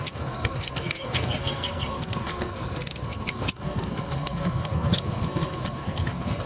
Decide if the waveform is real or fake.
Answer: fake